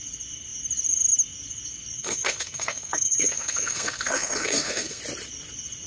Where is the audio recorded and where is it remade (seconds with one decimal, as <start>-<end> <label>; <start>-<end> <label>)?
0.0-2.0 recorded; 2.0-5.0 remade; 5.0-5.9 recorded